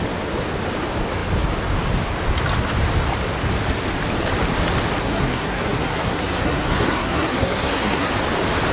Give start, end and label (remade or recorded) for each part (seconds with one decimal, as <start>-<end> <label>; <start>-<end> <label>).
0.0-5.0 recorded; 5.0-8.1 remade; 8.1-8.7 recorded